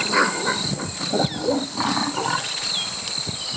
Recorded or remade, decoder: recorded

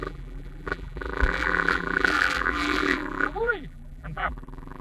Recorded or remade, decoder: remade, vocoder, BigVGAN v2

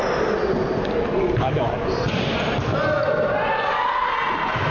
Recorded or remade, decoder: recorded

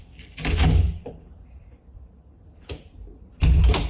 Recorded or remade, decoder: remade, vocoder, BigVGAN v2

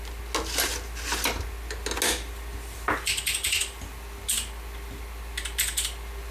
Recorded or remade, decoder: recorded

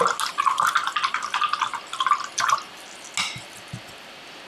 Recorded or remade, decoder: recorded